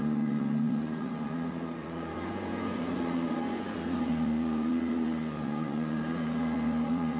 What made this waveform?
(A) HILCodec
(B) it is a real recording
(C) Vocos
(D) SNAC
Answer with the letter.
C